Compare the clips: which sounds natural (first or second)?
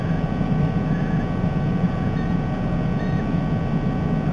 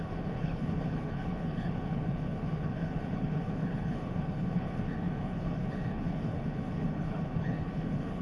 first